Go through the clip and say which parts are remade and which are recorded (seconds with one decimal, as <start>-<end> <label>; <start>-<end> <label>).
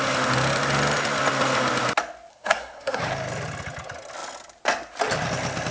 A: 0.0-2.3 recorded; 2.3-3.0 remade; 3.0-5.7 recorded